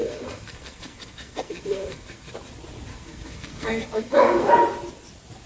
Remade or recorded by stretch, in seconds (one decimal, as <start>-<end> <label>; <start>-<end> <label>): 0.0-2.3 remade; 2.3-2.9 recorded; 2.9-4.5 remade; 4.5-5.5 recorded

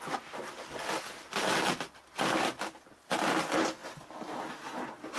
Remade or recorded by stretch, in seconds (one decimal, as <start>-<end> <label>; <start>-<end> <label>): 0.0-5.2 recorded

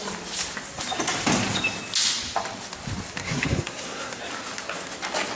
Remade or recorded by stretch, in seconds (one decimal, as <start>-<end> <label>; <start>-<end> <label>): 0.0-3.2 recorded; 3.2-4.2 remade; 4.2-5.4 recorded

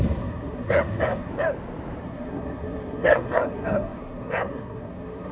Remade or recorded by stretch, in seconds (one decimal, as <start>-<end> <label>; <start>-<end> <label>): 0.0-1.3 remade; 1.3-2.0 recorded; 2.0-5.3 remade

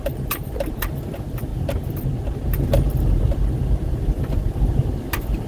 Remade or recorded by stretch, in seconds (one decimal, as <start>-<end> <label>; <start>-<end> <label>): 0.0-5.5 recorded

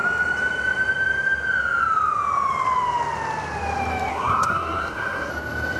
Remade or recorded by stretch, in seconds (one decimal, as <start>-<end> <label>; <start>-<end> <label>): 0.0-4.1 recorded; 4.1-5.3 remade; 5.3-5.8 recorded